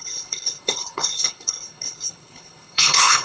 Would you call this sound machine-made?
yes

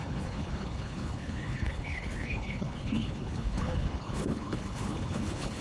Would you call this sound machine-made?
yes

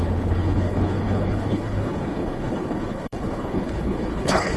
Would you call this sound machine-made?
yes